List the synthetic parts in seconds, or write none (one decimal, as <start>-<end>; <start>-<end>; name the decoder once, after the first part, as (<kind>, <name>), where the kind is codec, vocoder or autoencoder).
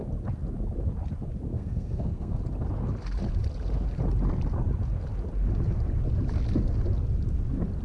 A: 1.5-2.4 (codec, SNAC)